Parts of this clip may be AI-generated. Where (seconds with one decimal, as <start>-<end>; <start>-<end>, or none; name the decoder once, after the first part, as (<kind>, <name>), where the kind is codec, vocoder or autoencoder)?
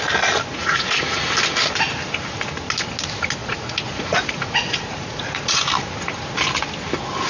0.5-1.2 (vocoder, Vocos); 3.4-5.6